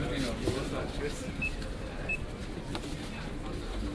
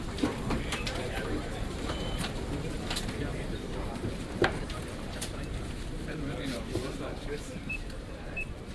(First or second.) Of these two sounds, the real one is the first